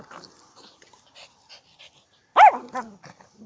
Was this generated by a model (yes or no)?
no